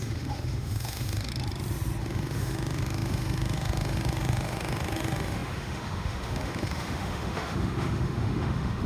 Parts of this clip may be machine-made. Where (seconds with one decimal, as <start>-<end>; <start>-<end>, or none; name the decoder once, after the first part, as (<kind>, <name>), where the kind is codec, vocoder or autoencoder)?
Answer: 0.0-1.3 (autoencoder, DAC-VAE); 2.0-8.9